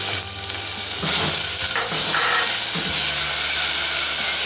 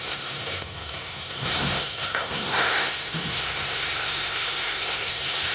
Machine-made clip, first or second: second